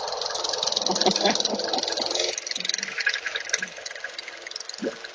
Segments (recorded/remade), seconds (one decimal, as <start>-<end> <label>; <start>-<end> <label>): 0.0-5.1 recorded